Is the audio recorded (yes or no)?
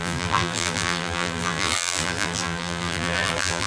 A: no